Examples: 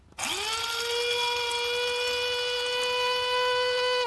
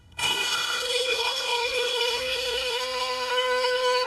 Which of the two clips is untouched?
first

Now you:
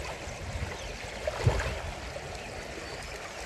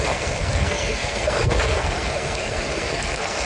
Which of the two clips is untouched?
first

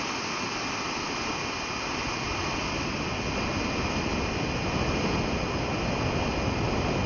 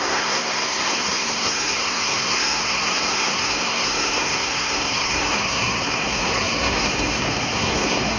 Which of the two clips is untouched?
first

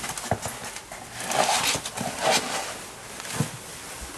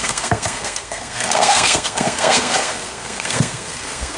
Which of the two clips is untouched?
first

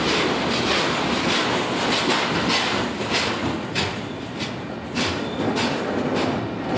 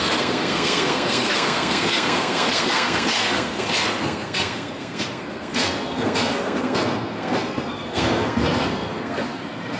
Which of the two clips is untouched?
first